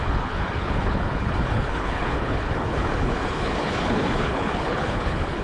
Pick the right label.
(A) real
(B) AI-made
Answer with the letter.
B